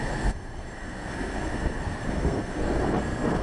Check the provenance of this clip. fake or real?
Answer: fake